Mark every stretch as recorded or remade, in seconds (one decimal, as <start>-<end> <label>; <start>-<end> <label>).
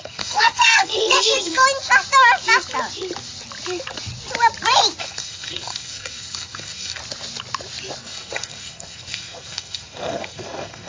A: 0.0-1.6 remade; 1.6-5.0 recorded; 5.0-7.0 remade; 7.0-8.0 recorded; 8.0-10.9 remade